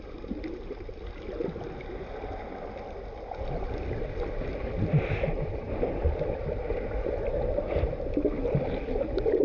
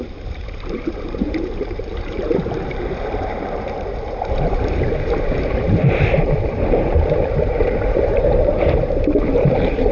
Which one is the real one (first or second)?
first